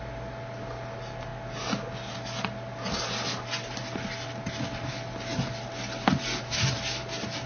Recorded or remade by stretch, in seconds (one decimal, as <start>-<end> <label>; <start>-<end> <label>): 0.0-7.5 recorded